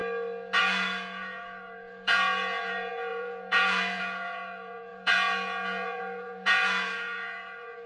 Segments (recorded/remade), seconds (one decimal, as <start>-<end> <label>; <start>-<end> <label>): 0.0-0.6 recorded; 0.6-7.9 remade